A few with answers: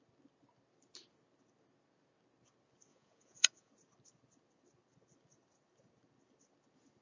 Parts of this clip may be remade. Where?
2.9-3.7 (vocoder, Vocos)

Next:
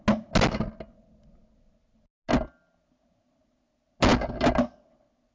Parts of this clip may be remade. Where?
none